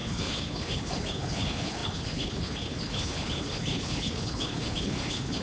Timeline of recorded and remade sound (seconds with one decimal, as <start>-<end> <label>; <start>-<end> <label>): 0.0-5.4 remade